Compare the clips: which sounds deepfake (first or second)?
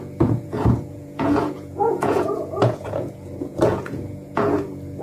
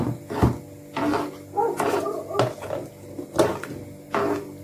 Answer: first